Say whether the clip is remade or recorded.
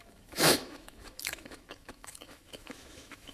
remade